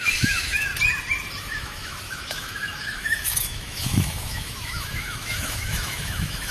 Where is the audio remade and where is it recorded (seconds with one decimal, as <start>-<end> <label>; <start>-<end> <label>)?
0.0-0.7 remade; 0.7-1.5 recorded; 1.5-6.5 remade